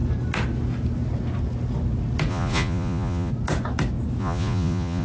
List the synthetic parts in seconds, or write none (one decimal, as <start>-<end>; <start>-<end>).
2.3-3.3; 4.2-5.0